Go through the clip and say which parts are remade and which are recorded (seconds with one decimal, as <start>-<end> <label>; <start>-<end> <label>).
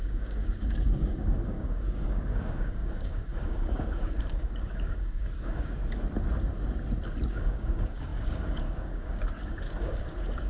0.0-5.8 remade; 5.8-7.3 recorded; 7.3-10.5 remade